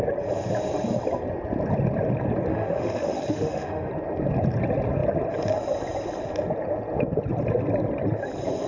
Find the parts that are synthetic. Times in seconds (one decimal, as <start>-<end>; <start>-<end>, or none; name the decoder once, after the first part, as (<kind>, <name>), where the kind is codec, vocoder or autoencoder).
2.5-3.9 (autoencoder, DAC-VAE)